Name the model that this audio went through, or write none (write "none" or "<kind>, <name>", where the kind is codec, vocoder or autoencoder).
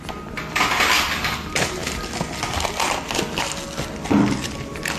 none